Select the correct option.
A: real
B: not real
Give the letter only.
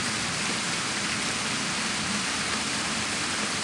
A